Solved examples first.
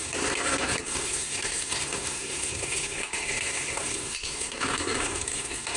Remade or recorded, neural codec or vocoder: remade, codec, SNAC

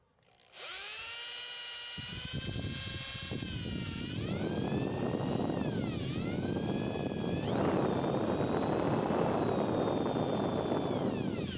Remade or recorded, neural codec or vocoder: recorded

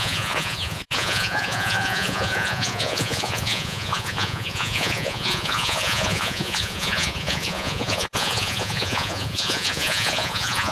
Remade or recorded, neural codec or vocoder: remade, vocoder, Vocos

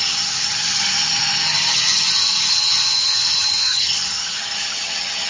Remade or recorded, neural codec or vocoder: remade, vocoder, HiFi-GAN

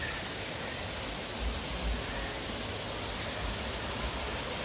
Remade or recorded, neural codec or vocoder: recorded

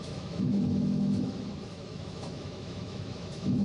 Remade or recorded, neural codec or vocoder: remade, autoencoder, DAC-VAE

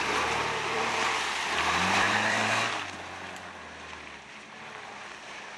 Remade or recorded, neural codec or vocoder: remade, vocoder, BigVGAN v2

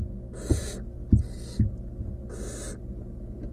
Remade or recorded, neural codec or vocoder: recorded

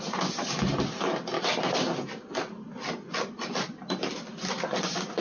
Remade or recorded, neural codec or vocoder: recorded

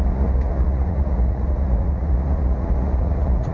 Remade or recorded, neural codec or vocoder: remade, vocoder, Vocos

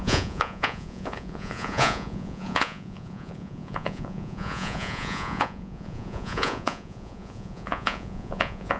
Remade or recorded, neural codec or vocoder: remade, vocoder, Vocos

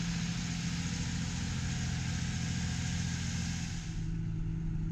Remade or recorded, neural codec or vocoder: recorded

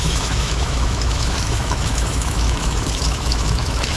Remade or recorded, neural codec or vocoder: remade, autoencoder, DAC-VAE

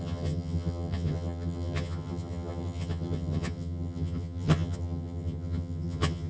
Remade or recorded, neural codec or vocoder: remade, vocoder, HiFi-GAN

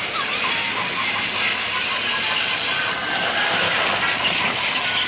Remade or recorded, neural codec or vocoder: recorded